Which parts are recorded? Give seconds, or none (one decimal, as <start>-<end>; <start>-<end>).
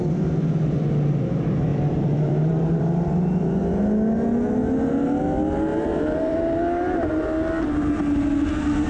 0.0-1.7; 2.5-5.7; 7.1-8.9